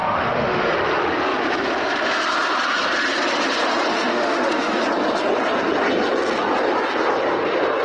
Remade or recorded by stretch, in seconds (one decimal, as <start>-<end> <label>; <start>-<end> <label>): 0.0-0.7 remade; 0.7-3.9 recorded; 3.9-4.8 remade; 4.8-7.8 recorded